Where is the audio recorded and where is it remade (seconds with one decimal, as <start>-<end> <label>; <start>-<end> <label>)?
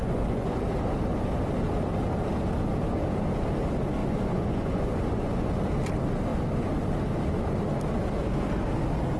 0.0-0.6 remade; 0.6-4.0 recorded; 4.0-5.5 remade; 5.5-9.2 recorded